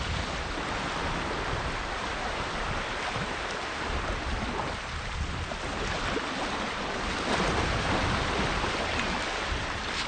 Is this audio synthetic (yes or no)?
no